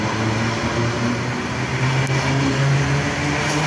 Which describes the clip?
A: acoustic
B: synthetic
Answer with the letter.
A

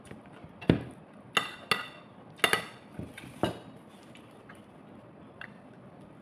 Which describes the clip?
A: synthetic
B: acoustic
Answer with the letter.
B